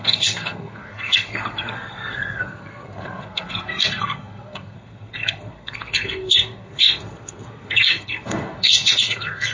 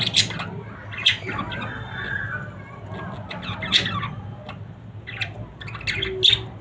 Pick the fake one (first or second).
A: first